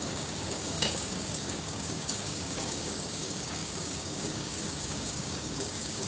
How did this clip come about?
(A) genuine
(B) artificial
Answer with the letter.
B